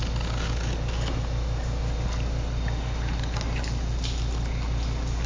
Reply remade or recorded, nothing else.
recorded